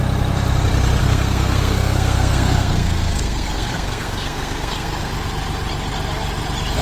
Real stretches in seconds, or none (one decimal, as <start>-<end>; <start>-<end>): 0.0-1.0; 5.1-6.8